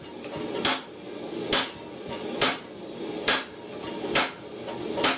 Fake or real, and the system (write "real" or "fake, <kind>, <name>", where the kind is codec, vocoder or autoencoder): real